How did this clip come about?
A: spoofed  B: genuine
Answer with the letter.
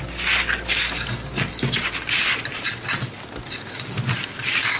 B